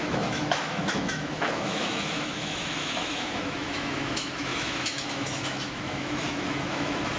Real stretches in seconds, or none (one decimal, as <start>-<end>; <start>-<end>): none